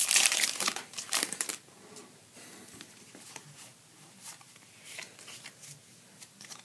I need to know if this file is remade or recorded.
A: remade